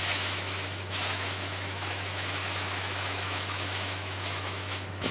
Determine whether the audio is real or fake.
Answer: fake